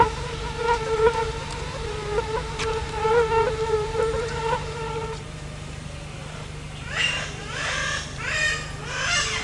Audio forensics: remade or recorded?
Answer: remade